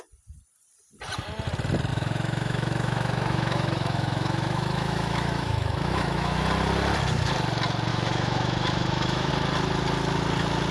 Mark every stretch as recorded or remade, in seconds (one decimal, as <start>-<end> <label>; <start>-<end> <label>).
0.0-1.9 recorded; 1.9-6.4 remade; 6.4-7.9 recorded; 7.9-9.3 remade; 9.3-10.7 recorded